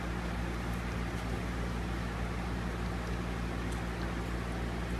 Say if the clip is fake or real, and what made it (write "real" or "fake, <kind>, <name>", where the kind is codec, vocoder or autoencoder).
real